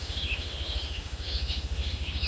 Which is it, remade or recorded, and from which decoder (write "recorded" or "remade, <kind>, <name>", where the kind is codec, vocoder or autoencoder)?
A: remade, autoencoder, DAC-VAE